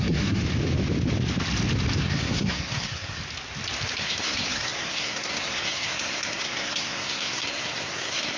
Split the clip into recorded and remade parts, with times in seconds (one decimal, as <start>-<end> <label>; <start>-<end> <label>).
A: 0.0-0.4 remade; 0.4-2.0 recorded; 2.0-3.2 remade; 3.2-4.0 recorded; 4.0-8.4 remade